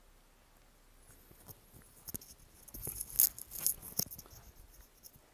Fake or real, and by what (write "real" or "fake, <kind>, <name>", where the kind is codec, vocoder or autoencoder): real